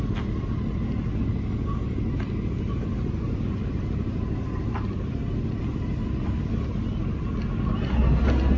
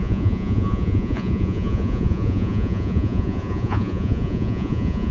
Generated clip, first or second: second